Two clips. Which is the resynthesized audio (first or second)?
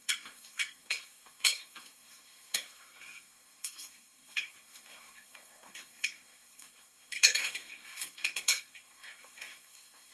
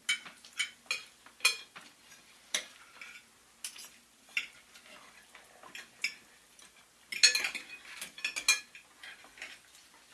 first